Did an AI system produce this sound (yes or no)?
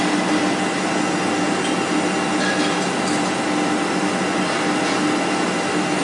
no